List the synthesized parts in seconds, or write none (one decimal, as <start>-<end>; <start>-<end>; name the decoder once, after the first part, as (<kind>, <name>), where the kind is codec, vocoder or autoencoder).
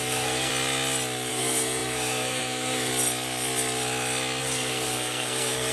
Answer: 0.0-0.5 (codec, SNAC); 1.3-2.9; 4.4-5.7